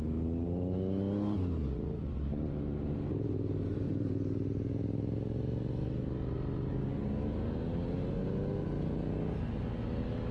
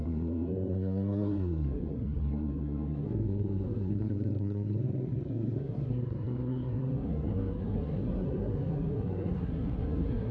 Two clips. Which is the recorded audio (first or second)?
first